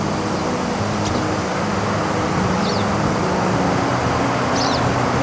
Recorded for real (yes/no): yes